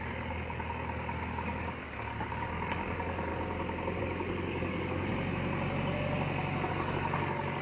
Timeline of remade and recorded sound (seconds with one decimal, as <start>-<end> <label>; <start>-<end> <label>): 0.0-3.3 remade; 3.3-4.0 recorded; 4.0-5.1 remade; 5.1-6.7 recorded; 6.7-7.6 remade